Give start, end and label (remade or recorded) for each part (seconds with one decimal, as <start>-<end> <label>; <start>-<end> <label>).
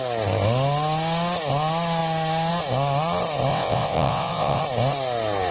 0.0-3.5 recorded; 3.5-4.6 remade; 4.6-5.5 recorded